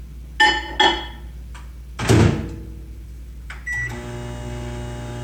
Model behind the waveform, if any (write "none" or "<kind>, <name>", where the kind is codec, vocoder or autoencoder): none